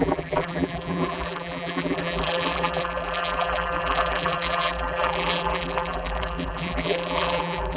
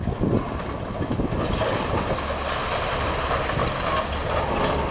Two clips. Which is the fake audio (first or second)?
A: first